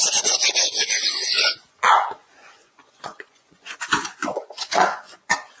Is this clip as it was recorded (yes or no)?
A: no